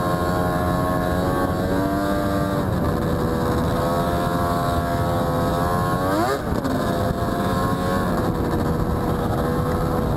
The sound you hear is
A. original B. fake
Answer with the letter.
A